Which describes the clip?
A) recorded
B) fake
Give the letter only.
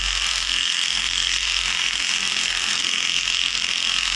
B